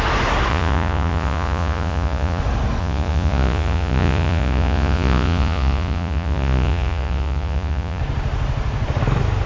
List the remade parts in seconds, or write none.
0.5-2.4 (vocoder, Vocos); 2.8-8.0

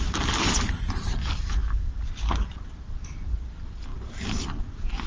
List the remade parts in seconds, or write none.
none

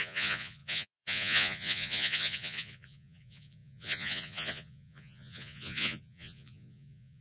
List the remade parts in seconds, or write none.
0.0-7.2 (vocoder, Vocos)

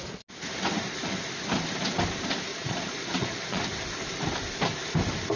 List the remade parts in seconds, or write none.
2.5-3.6 (vocoder, Vocos)

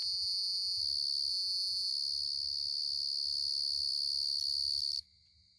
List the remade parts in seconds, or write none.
0.0-0.8 (vocoder, Vocos); 1.3-1.9

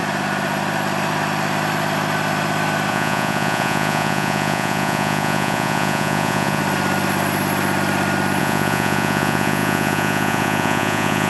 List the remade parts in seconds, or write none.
2.9-6.6 (vocoder, Vocos); 8.4-11.3

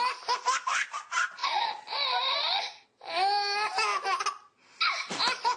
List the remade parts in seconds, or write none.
none